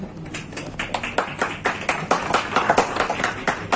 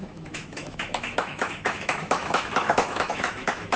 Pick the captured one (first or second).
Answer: first